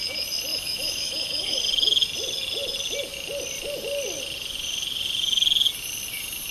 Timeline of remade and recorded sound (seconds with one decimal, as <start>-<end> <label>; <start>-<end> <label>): 0.0-0.5 recorded; 0.5-1.6 remade; 1.6-6.5 recorded